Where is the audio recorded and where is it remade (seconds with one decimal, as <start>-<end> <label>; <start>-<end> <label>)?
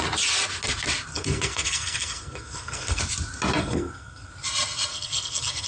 0.0-1.1 recorded; 1.1-3.0 remade; 3.0-3.6 recorded; 3.6-4.3 remade; 4.3-4.9 recorded; 4.9-5.7 remade